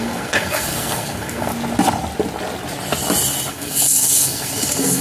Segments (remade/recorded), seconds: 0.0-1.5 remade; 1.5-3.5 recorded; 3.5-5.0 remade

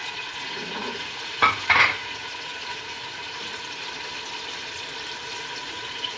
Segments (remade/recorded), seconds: 0.0-3.5 remade; 3.5-5.6 recorded; 5.6-6.2 remade

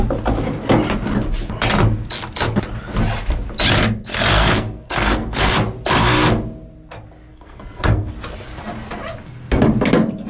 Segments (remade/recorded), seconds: 0.0-4.1 recorded; 4.1-5.5 remade; 5.5-7.3 recorded; 7.3-8.1 remade; 8.1-10.3 recorded

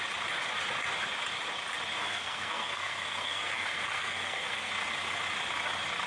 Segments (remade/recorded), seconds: 0.0-2.0 recorded; 2.0-4.7 remade; 4.7-6.1 recorded

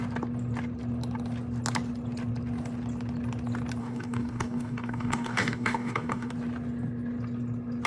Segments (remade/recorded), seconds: 0.0-3.8 recorded; 3.8-6.3 remade; 6.3-7.9 recorded

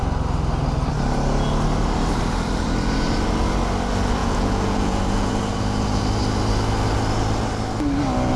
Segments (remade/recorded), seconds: 0.0-4.2 recorded; 4.2-5.3 remade; 5.3-8.4 recorded

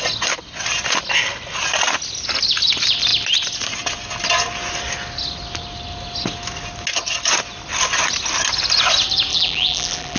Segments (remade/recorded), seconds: 0.0-9.3 recorded; 9.3-10.2 remade

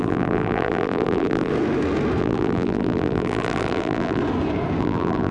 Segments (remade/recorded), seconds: 0.0-1.5 remade; 1.5-2.2 recorded; 2.2-4.2 remade; 4.2-4.8 recorded; 4.8-5.3 remade